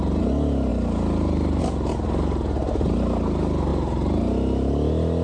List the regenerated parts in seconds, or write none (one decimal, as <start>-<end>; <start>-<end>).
none